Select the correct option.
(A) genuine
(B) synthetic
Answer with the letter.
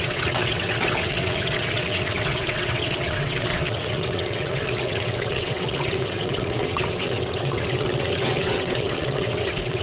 B